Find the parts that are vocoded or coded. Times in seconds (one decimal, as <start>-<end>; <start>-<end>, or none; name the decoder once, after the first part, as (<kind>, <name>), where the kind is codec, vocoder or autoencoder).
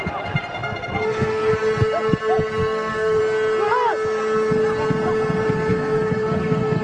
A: 0.6-1.5 (codec, SNAC); 2.6-3.2; 5.7-6.8